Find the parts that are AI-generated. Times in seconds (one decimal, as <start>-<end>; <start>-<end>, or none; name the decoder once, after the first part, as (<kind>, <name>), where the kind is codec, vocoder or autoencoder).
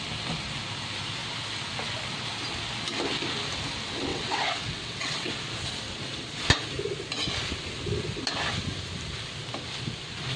4.1-5.3 (vocoder, WaveNeXt)